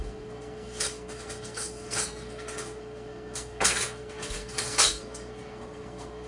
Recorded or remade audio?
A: remade